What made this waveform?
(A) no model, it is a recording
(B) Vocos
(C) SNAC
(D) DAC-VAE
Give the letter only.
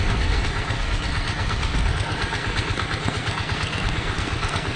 C